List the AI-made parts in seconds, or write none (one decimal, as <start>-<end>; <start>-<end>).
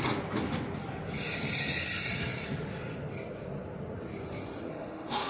4.7-5.3